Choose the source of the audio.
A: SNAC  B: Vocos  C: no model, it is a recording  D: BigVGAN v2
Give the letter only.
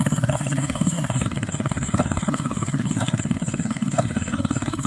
A